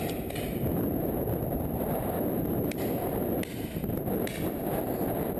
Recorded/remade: recorded